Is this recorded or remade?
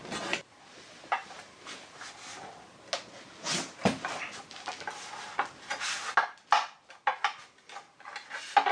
recorded